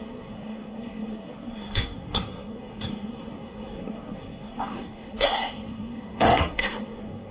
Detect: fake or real fake